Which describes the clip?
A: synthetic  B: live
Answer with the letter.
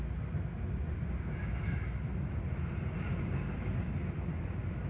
B